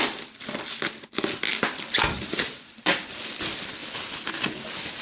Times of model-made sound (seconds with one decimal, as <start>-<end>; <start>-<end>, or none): none